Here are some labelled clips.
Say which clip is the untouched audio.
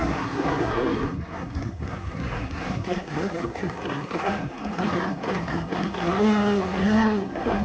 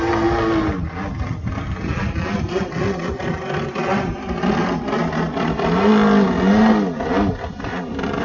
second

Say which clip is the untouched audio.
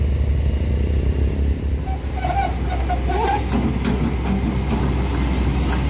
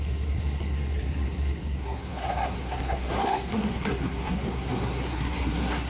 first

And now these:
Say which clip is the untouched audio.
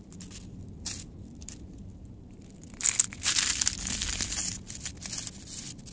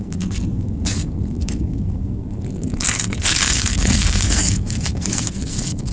first